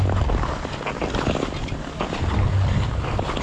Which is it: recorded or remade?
recorded